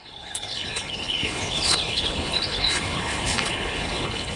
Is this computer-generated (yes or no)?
yes